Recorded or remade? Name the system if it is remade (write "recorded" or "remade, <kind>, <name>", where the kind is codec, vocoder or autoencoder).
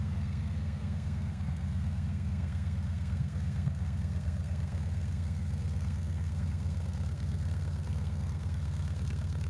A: remade, codec, SNAC